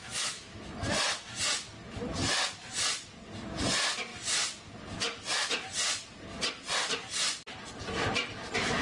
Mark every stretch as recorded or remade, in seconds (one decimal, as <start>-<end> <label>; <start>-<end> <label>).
0.0-0.6 remade; 0.6-8.8 recorded